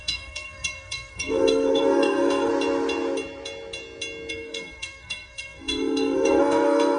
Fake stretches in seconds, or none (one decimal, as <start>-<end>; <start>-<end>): 0.0-2.5; 4.3-7.0